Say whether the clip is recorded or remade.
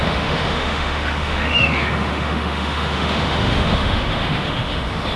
remade